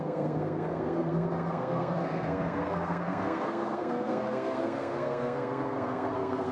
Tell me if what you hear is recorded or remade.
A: remade